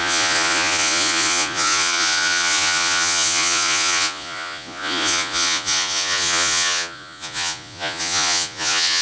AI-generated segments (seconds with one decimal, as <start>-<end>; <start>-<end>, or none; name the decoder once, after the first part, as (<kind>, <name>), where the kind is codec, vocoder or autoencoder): 0.0-9.0 (vocoder, Vocos)